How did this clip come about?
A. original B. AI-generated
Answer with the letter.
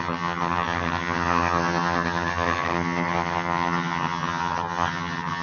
B